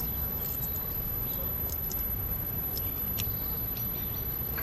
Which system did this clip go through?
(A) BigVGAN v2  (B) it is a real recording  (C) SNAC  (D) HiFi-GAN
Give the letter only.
A